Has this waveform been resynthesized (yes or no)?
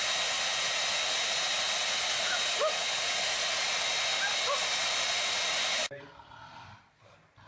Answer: no